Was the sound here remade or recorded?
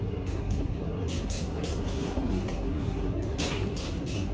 remade